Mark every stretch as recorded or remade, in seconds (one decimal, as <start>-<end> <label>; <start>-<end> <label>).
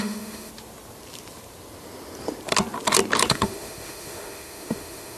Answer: 0.0-0.5 remade; 0.5-3.3 recorded; 3.3-5.2 remade